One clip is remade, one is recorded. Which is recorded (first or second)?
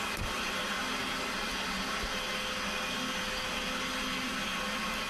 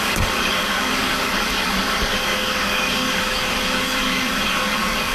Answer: first